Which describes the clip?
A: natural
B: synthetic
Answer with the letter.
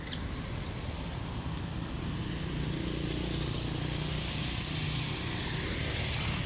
A